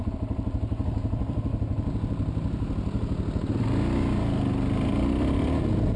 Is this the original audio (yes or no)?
yes